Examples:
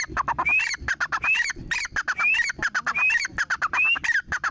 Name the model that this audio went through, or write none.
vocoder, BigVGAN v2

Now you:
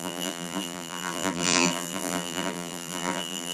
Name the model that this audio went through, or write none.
vocoder, BigVGAN v2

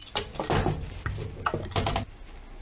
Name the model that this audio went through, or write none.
none